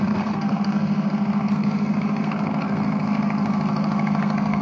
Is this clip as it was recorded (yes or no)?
no